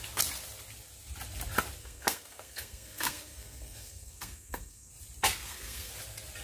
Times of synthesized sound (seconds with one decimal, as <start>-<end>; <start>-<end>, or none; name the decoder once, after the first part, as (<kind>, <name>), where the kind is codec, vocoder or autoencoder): 1.8-4.9 (codec, SNAC); 5.4-5.9

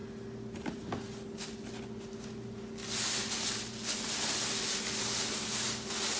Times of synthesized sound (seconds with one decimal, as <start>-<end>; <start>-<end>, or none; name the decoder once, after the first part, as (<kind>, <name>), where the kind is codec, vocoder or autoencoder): none

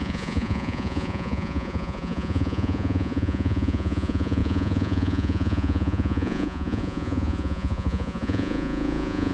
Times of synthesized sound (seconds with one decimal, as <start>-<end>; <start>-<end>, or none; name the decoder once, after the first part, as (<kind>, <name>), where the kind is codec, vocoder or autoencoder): 0.0-9.3 (vocoder, Vocos)

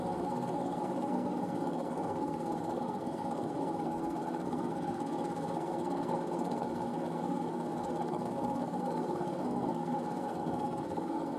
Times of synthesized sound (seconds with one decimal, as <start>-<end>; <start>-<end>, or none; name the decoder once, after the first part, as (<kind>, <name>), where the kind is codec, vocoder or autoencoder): 0.0-11.4 (codec, SNAC)

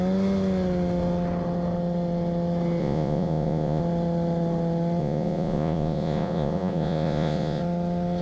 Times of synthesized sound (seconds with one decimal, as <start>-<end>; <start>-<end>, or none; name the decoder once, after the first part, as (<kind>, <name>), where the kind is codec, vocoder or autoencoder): 2.8-3.8 (vocoder, Vocos); 5.0-7.6

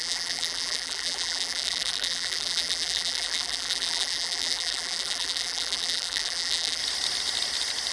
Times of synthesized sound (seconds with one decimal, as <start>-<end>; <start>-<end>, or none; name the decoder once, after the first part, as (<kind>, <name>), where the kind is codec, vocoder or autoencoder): 0.0-6.8 (vocoder, BigVGAN v2)

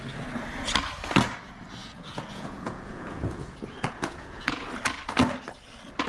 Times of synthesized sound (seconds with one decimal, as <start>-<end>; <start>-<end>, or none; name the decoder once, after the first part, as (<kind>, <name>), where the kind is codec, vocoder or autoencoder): 1.8-4.7 (vocoder, Vocos)